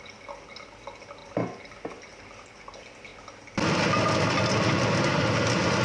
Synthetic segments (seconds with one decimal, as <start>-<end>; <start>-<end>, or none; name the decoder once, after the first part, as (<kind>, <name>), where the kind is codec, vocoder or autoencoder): none